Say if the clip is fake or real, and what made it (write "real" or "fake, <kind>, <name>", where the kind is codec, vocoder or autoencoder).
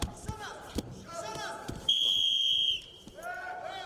fake, vocoder, BigVGAN v2